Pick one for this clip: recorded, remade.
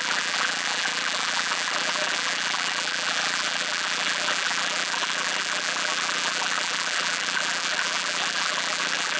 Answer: remade